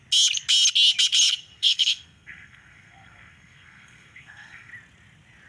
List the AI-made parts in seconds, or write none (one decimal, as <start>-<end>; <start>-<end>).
1.4-4.7